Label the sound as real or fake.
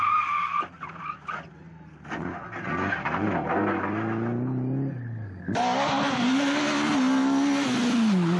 real